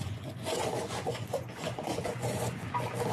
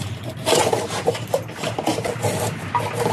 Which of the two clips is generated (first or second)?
first